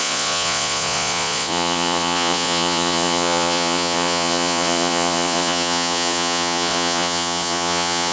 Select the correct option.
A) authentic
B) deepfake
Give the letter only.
B